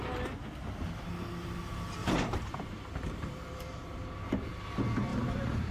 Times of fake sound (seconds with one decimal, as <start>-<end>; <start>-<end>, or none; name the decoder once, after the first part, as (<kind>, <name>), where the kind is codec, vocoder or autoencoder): 2.0-3.8 (vocoder, BigVGAN v2); 5.1-5.7